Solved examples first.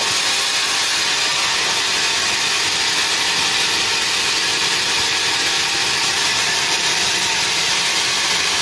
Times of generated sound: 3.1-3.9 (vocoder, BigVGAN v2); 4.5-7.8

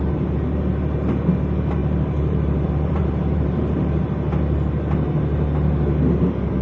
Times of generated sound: 1.8-4.0 (vocoder, BigVGAN v2)

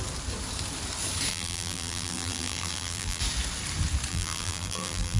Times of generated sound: 1.3-3.2 (vocoder, BigVGAN v2); 4.1-5.2

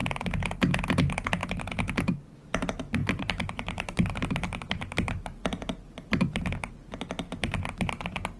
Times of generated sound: 3.0-6.7 (vocoder, BigVGAN v2)

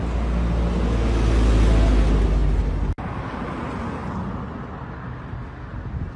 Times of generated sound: none